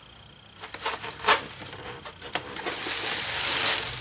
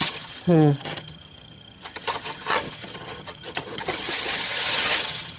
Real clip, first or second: first